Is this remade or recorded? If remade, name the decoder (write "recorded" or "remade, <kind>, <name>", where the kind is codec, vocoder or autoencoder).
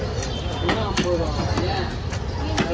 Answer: remade, vocoder, BigVGAN v2